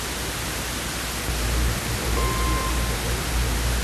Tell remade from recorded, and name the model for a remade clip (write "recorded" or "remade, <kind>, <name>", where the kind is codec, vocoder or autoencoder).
recorded